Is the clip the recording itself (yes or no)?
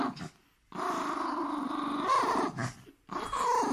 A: yes